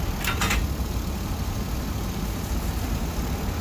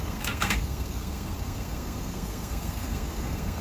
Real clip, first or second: first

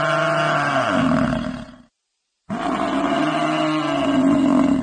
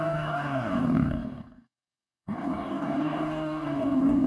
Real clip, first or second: first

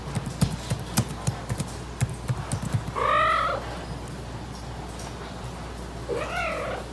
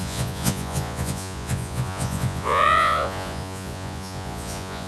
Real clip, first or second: first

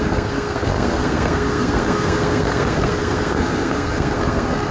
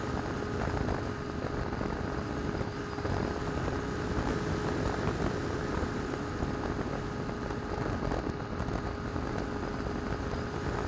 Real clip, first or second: second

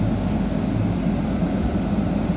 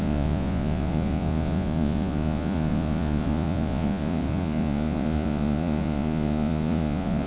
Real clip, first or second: first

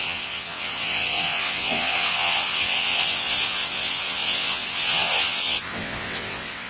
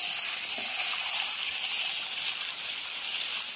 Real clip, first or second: second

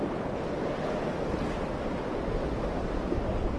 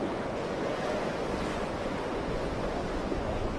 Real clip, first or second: first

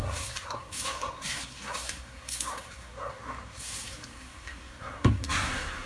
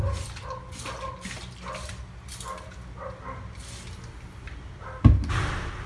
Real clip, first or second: second